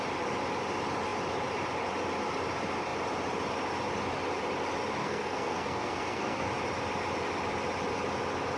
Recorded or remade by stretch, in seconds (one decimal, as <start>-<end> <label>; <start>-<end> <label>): 0.0-5.0 recorded; 5.0-6.5 remade; 6.5-8.6 recorded